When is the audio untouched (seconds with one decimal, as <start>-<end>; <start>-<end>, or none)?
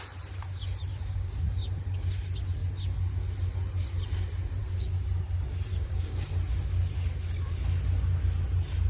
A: 0.0-0.9; 1.4-5.7; 6.3-8.9